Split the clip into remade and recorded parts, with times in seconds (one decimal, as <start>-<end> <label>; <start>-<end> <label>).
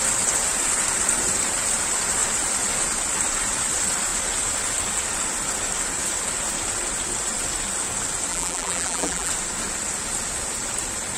0.0-8.3 recorded; 8.3-9.3 remade; 9.3-11.2 recorded